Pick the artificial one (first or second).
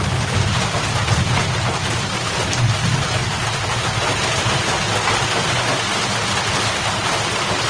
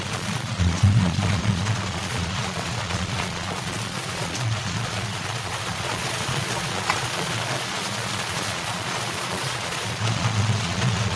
second